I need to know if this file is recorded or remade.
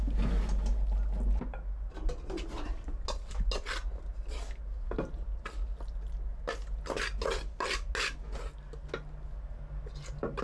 recorded